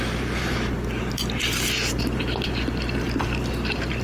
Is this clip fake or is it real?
fake